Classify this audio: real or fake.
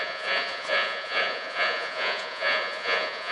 fake